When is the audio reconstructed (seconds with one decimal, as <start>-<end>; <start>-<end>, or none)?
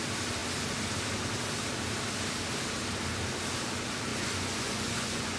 4.1-5.4